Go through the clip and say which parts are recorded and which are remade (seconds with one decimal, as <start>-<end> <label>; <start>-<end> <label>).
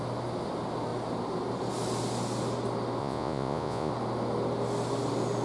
0.0-3.0 recorded; 3.0-3.9 remade; 3.9-5.4 recorded